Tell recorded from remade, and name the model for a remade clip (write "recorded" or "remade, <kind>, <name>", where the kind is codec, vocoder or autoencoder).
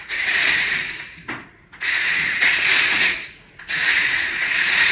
remade, vocoder, Vocos